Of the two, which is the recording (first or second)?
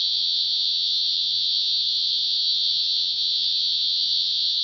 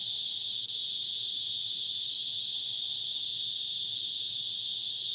second